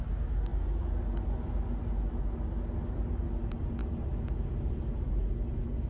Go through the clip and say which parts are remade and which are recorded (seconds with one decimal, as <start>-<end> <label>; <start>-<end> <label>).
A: 0.0-5.9 recorded